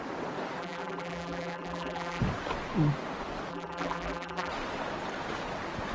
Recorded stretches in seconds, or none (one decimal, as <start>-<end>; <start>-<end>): 0.0-0.6; 2.2-3.5; 4.5-5.9